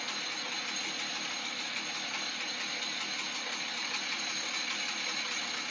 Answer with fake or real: real